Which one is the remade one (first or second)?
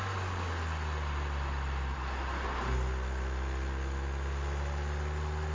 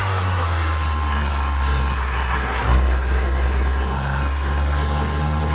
second